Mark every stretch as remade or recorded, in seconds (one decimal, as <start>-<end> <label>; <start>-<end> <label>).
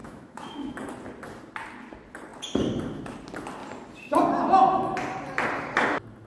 0.0-0.9 remade; 0.9-6.3 recorded